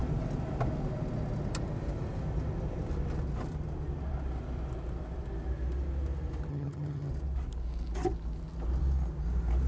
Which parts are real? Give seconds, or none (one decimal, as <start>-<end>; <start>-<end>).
0.0-6.5; 7.1-9.7